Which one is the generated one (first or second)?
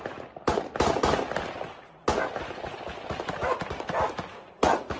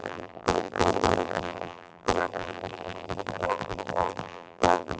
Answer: second